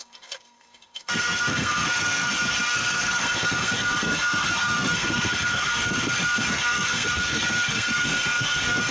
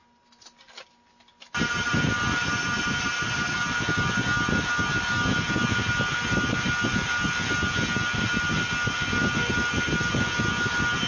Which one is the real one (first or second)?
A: second